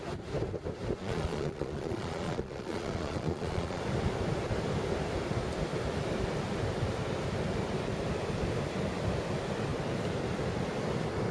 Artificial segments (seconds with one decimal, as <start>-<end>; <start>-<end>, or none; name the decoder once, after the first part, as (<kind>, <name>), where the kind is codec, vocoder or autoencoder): 1.0-3.8 (vocoder, Vocos)

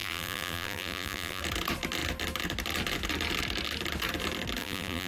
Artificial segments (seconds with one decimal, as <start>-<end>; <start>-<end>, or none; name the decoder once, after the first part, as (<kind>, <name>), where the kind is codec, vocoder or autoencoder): 0.0-1.4 (vocoder, BigVGAN v2); 4.6-5.1

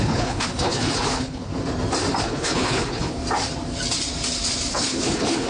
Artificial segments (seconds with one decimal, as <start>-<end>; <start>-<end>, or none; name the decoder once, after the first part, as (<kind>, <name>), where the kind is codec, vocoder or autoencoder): 0.0-1.5 (codec, HILCodec); 2.2-3.2; 4.7-5.5

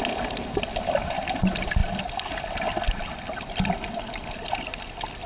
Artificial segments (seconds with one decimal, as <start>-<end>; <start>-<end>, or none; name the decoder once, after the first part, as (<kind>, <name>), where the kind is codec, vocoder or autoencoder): none

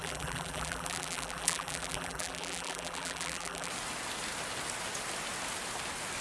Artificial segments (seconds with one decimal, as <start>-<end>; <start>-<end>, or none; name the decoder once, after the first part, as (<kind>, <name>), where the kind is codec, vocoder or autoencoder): 0.0-3.7 (vocoder, BigVGAN v2)

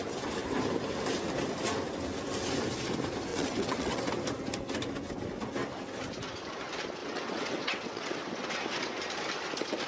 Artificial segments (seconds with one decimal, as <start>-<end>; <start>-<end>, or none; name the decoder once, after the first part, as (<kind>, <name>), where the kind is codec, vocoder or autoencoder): 3.3-4.0 (vocoder, WaveNeXt); 7.0-8.1

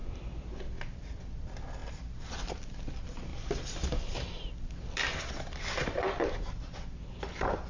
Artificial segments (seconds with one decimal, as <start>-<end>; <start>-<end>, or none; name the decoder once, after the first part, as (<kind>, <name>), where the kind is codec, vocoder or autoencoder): 3.3-7.2 (vocoder, BigVGAN v2)